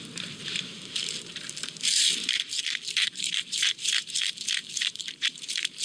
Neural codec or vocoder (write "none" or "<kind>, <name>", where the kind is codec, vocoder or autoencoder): vocoder, BigVGAN v2